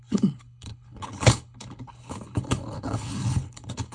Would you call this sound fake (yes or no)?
yes